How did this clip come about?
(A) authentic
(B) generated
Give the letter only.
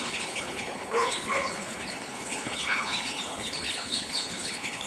B